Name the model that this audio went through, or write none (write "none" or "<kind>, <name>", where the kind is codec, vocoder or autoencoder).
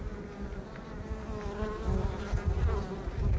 none